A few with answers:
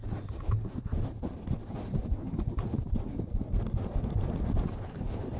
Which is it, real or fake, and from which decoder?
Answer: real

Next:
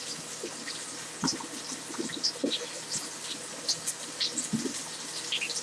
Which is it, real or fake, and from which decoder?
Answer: real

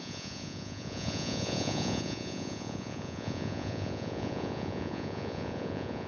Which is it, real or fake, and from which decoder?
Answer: fake, vocoder, Vocos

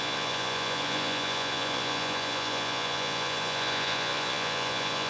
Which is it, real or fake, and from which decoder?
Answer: fake, vocoder, Vocos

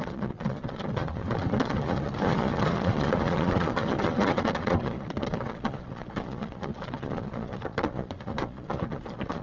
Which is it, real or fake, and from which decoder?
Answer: fake, vocoder, Vocos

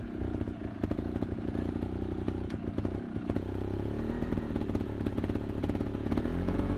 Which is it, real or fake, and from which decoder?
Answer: fake, vocoder, Vocos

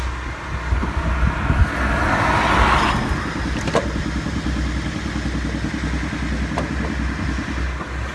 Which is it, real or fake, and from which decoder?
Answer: real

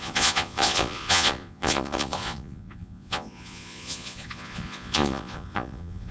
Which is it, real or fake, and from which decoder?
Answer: fake, vocoder, Vocos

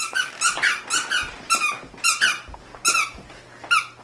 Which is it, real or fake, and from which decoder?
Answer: real